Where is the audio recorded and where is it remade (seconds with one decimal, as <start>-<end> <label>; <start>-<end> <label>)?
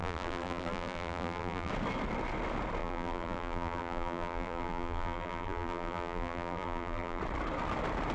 0.0-1.7 remade; 1.7-2.8 recorded; 2.8-7.2 remade; 7.2-8.1 recorded